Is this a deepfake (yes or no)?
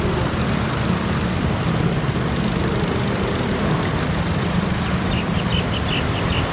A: no